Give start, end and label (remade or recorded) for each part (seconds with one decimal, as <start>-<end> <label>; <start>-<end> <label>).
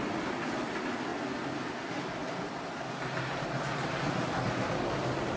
0.0-5.4 recorded